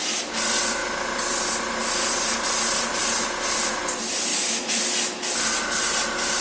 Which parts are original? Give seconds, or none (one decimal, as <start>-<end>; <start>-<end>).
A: 0.0-4.3; 4.8-6.4